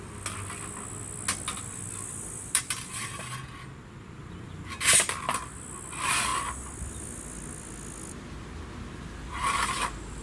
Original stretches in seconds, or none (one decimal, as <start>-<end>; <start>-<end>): 0.0-10.2

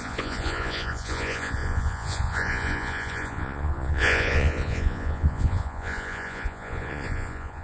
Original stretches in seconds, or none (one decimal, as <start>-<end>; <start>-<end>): none

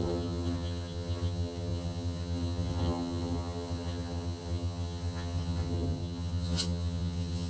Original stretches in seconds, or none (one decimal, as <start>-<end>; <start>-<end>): none

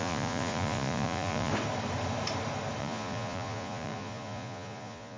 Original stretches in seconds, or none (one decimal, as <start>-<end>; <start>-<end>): 1.5-2.8

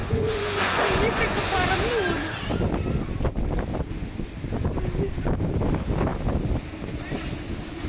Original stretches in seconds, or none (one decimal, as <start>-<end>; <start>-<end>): 1.5-7.9

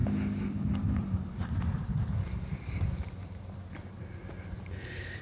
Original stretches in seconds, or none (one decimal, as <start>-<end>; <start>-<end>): none

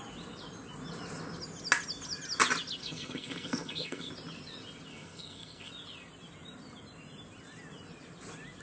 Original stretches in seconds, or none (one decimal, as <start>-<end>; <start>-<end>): 0.0-2.8; 4.1-4.9; 5.7-8.6